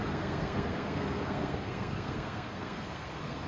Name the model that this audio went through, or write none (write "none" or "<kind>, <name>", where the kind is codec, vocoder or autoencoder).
codec, SNAC